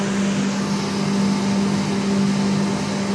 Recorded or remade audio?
recorded